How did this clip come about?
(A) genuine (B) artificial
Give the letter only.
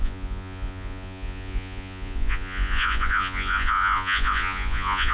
B